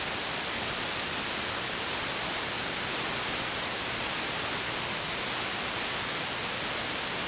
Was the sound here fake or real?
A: real